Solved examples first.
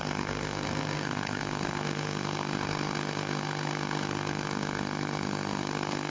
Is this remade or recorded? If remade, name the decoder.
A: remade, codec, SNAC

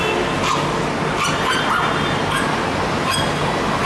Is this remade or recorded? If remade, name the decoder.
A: recorded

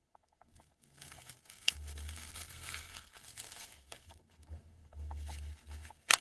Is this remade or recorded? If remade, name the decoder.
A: remade, codec, SNAC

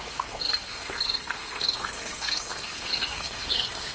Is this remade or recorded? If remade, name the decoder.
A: remade, codec, SNAC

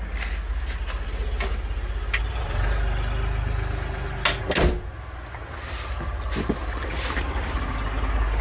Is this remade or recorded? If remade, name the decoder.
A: recorded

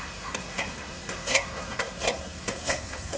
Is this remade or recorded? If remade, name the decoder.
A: remade, codec, SNAC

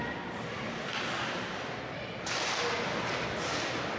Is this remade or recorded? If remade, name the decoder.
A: recorded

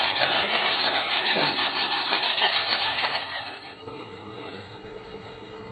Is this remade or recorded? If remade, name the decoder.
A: remade, codec, SNAC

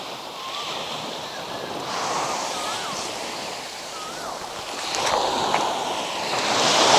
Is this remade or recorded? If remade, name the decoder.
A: recorded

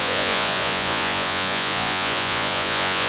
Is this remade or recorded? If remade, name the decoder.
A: remade, vocoder, Vocos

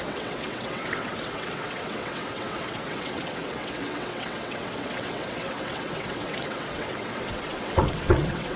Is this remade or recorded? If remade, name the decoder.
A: remade, vocoder, WaveNeXt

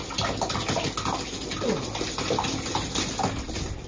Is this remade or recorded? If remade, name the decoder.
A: recorded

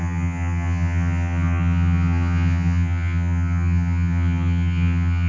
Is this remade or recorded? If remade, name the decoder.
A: remade, vocoder, HiFi-GAN